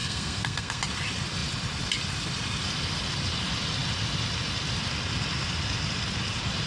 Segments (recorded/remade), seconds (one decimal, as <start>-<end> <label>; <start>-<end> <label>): 0.0-0.8 remade; 0.8-6.7 recorded